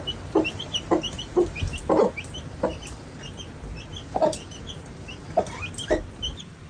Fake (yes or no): no